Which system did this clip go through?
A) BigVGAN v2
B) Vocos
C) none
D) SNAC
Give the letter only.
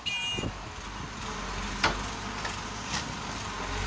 C